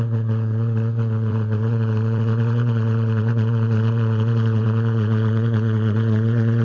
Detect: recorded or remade remade